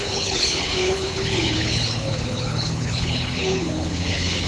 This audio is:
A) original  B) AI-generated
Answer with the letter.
B